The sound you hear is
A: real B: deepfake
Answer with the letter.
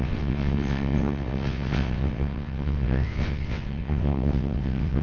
B